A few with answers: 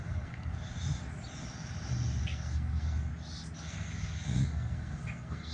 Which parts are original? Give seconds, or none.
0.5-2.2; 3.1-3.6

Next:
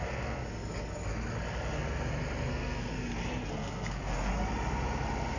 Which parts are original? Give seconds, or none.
0.4-2.5; 2.9-3.5; 4.3-5.4

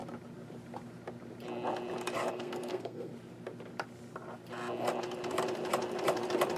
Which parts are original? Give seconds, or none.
0.0-2.3; 3.1-6.6

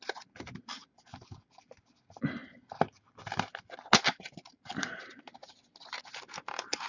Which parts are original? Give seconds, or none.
0.0-6.9